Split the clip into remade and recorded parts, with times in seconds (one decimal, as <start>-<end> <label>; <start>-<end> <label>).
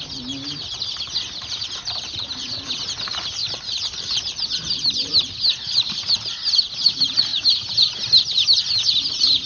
0.0-3.4 recorded; 3.4-6.7 remade; 6.7-9.5 recorded